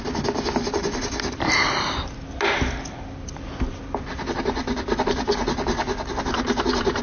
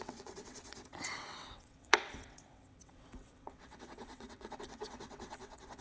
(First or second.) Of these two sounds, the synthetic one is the second